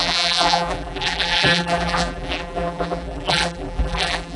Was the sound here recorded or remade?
remade